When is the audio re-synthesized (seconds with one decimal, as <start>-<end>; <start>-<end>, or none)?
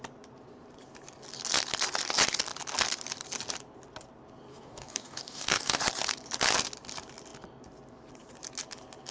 4.5-5.8